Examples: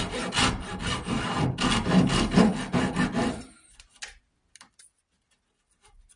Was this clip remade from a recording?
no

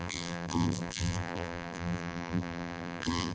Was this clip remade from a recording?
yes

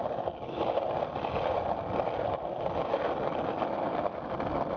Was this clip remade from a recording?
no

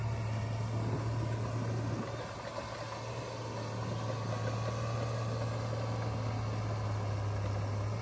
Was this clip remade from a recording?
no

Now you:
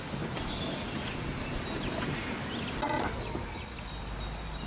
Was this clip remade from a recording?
no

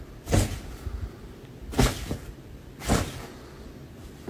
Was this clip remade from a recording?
no